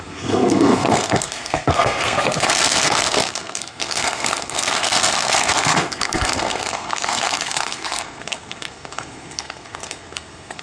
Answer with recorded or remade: remade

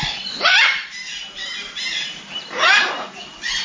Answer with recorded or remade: remade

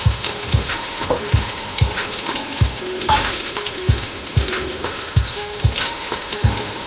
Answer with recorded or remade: remade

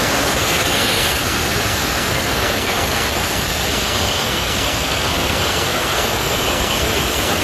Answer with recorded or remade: remade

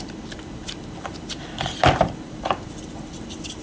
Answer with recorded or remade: remade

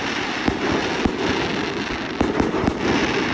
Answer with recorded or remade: recorded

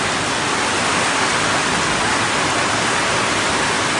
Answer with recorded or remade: recorded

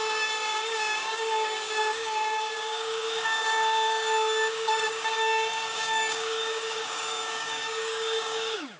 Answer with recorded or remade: remade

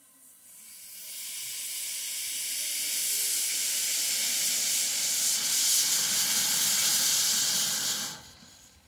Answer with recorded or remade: recorded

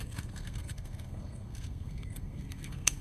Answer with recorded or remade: remade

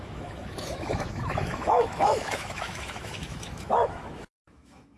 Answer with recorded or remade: remade